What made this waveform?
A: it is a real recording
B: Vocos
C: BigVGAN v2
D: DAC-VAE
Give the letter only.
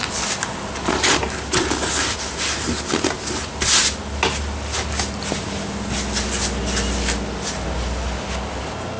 A